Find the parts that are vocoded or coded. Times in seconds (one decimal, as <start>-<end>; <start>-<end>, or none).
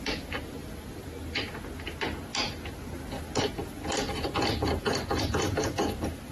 none